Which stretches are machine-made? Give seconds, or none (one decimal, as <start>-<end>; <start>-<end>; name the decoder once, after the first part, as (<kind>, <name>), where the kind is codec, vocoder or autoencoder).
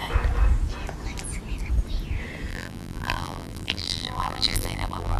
2.5-5.2 (vocoder, BigVGAN v2)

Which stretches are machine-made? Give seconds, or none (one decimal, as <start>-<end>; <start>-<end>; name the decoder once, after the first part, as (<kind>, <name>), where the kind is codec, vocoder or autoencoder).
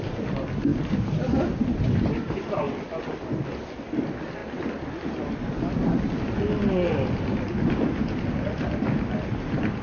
none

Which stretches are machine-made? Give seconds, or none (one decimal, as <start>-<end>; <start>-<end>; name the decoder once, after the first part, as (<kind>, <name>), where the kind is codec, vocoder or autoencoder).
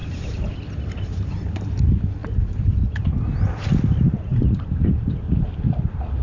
0.0-1.8 (vocoder, BigVGAN v2); 2.2-3.0; 4.3-5.5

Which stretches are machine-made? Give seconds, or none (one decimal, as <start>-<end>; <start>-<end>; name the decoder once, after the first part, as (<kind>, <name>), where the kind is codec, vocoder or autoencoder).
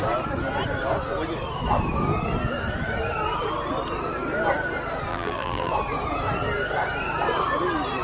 5.1-5.7 (vocoder, BigVGAN v2)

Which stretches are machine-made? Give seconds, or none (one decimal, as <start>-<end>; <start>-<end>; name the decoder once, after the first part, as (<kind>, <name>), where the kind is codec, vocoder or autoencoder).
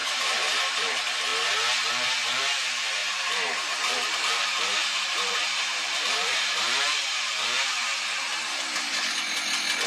0.0-0.9 (vocoder, BigVGAN v2); 3.0-7.3